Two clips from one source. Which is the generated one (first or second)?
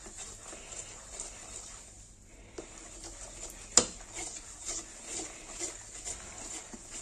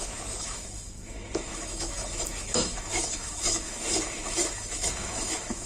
second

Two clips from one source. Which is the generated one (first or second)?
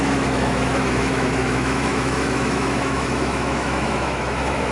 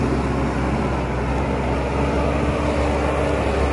first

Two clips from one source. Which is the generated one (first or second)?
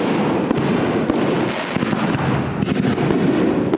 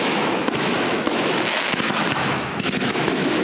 second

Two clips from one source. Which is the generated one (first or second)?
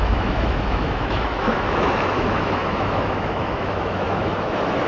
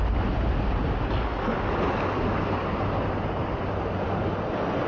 first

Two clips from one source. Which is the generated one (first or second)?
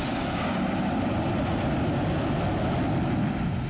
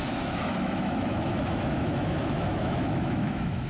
second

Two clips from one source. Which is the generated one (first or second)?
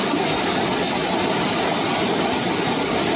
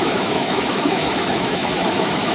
second